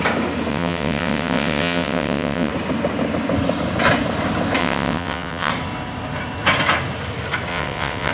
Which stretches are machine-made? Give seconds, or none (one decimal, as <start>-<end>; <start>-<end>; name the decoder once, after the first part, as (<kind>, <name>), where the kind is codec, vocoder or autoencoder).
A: 0.5-2.5 (vocoder, WaveNeXt); 4.6-5.5; 7.5-8.1